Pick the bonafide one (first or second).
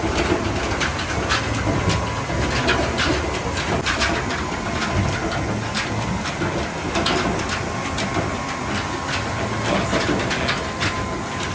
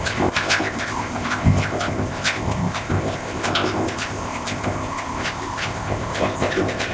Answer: first